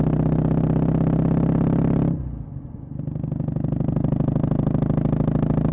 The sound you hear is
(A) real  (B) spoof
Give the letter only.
A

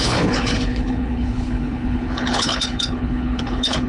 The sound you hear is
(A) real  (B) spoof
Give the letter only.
B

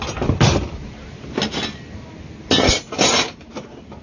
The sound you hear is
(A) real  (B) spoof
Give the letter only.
A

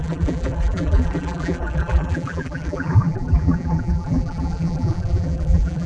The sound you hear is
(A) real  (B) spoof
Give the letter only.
B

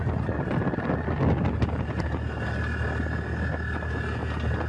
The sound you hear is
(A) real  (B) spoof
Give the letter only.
A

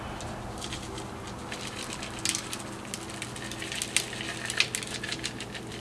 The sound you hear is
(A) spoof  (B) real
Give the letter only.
B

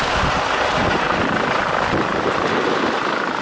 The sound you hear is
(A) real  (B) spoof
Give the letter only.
B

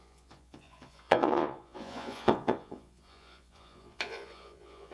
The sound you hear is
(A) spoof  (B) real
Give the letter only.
A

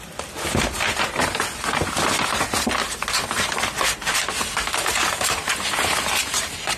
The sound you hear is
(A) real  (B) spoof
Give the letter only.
A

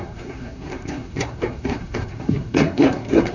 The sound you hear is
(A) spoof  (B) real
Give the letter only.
A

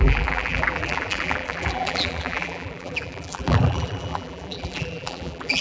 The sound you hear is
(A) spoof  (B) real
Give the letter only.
A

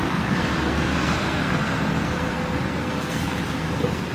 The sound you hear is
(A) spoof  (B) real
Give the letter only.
A